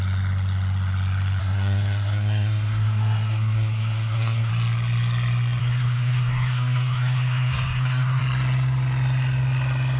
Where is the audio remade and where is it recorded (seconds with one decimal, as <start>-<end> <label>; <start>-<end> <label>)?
0.0-1.4 recorded; 1.4-4.5 remade; 4.5-5.6 recorded; 5.6-8.2 remade; 8.2-10.0 recorded

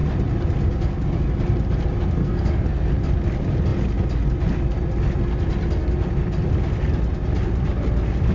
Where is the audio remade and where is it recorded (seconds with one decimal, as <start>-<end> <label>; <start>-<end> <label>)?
0.0-2.2 recorded; 2.2-2.9 remade; 2.9-8.3 recorded

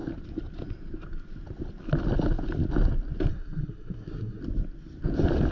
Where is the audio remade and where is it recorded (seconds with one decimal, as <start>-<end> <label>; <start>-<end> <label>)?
0.0-3.3 recorded; 3.3-4.4 remade; 4.4-5.5 recorded

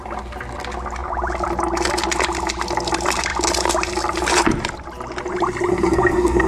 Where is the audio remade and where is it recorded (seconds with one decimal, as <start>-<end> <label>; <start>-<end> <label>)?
0.0-5.7 recorded; 5.7-6.5 remade

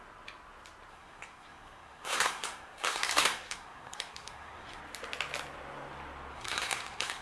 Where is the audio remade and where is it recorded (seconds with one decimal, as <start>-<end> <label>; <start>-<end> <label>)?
0.0-0.9 recorded; 0.9-4.8 remade; 4.8-6.3 recorded; 6.3-7.2 remade

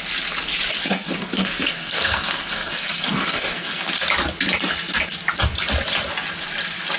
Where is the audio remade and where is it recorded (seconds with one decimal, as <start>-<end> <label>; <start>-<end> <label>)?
0.0-0.8 recorded; 0.8-3.9 remade; 3.9-7.0 recorded